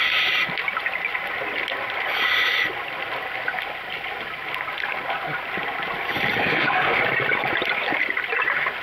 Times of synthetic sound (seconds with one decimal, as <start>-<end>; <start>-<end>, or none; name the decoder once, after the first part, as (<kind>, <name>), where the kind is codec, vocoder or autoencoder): 6.4-7.0 (autoencoder, DAC-VAE)